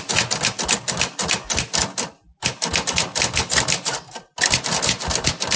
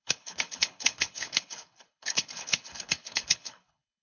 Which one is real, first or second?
first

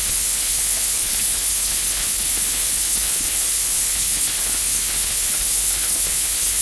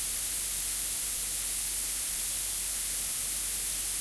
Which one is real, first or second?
second